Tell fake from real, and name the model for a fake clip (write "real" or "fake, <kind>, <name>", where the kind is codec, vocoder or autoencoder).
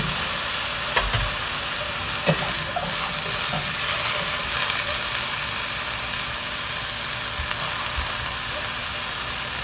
real